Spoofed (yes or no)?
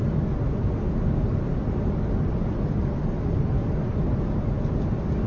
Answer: no